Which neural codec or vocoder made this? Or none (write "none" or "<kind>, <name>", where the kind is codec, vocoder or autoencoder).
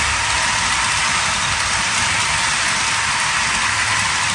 none